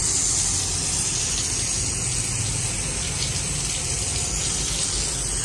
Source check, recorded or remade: recorded